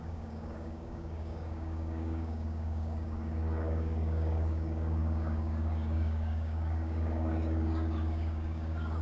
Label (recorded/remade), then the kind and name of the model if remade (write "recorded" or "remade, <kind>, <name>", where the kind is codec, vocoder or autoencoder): remade, codec, DAC